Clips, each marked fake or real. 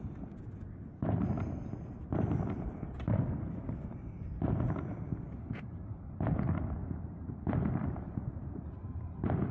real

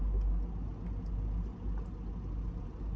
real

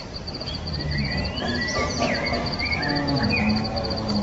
real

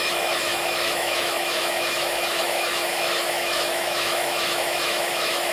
fake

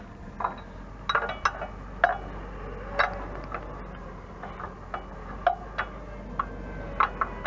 real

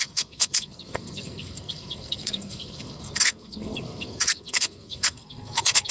fake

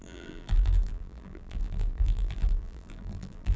fake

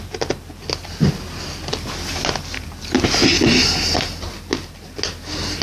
real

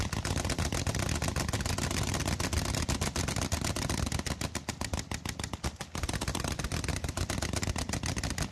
real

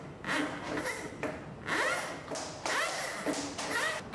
real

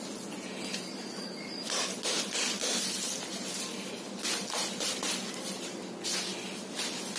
real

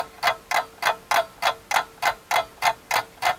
real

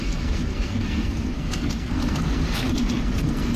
fake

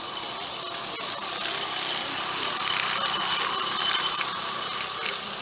real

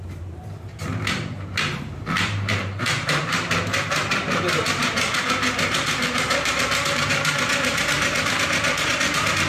fake